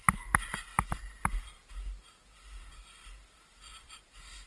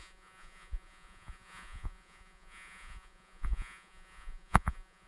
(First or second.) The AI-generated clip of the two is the second